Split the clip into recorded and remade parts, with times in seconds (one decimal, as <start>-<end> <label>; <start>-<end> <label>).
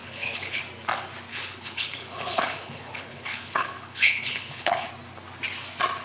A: 0.0-0.6 remade; 0.6-1.3 recorded; 1.3-4.9 remade; 4.9-6.0 recorded